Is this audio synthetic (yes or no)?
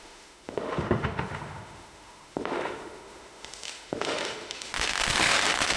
yes